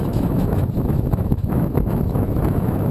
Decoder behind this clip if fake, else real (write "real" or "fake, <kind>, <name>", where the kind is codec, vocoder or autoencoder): fake, autoencoder, DAC-VAE